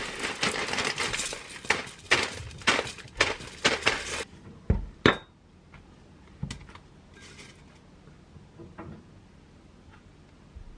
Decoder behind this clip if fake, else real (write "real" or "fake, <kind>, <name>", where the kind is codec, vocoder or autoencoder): real